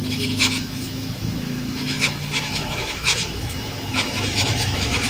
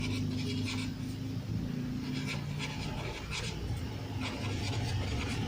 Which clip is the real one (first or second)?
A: second